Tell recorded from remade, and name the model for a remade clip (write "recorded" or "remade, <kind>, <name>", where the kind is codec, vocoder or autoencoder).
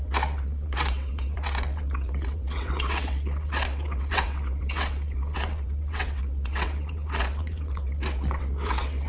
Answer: remade, vocoder, WaveNeXt